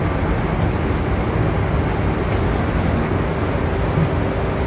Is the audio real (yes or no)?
yes